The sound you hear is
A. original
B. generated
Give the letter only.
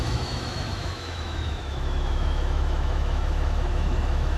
B